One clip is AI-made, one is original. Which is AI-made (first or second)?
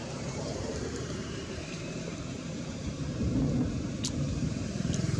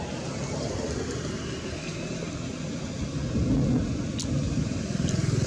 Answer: first